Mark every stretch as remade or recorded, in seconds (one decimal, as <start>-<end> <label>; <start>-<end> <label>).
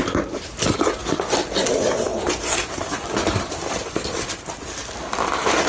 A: 0.0-5.7 recorded